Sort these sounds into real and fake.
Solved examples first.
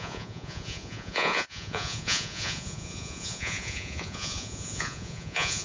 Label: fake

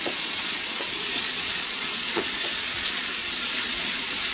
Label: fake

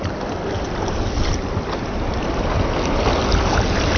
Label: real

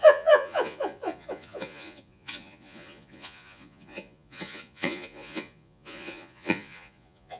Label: fake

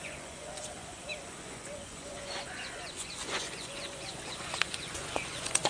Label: fake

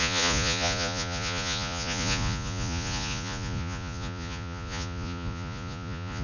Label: fake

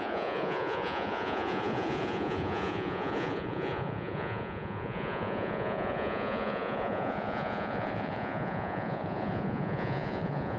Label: fake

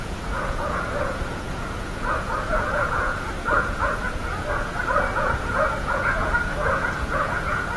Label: fake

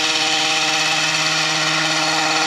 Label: real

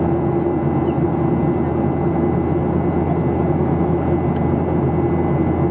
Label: real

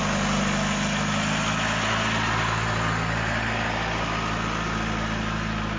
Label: real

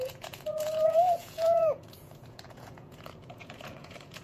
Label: fake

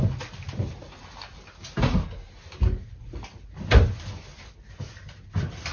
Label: real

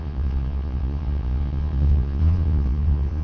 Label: fake